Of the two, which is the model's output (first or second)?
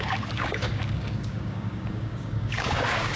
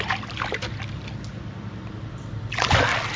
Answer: first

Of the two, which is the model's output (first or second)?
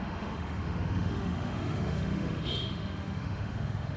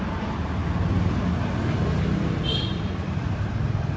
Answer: first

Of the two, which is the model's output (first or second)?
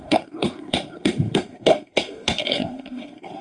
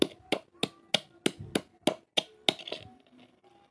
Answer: first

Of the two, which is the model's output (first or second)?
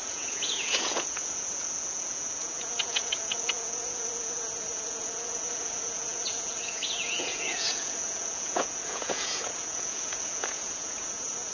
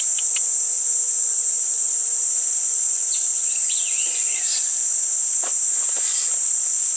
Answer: first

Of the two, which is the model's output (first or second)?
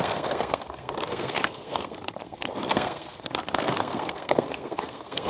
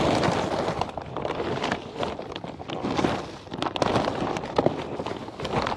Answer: first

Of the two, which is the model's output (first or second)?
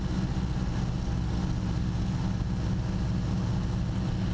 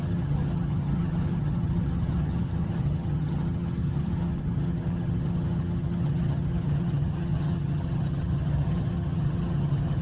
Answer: second